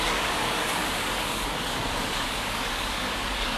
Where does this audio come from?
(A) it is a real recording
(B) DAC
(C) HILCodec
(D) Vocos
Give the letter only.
B